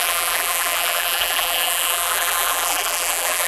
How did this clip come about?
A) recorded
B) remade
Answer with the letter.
B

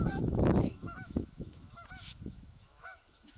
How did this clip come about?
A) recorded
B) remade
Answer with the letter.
B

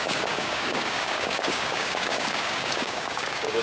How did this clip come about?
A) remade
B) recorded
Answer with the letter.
A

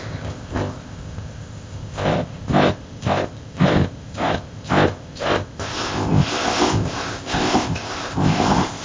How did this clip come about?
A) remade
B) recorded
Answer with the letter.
A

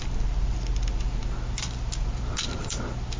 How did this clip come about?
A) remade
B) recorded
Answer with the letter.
B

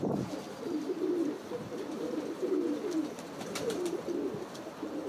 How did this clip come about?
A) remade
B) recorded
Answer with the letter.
A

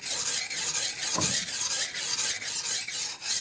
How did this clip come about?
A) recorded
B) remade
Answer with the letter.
A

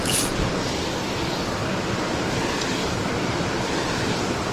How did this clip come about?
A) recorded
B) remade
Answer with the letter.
A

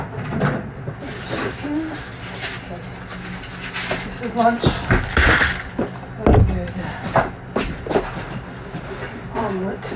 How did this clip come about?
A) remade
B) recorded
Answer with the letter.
B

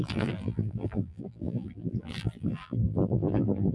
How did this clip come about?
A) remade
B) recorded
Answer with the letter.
A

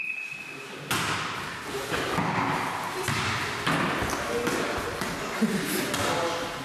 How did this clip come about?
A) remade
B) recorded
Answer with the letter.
B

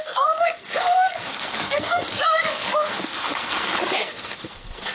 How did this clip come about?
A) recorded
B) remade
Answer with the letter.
B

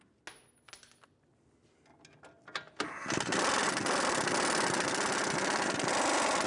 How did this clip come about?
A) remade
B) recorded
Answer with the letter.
B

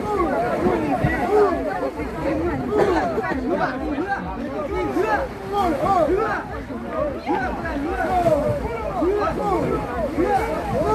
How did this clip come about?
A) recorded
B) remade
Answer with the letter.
A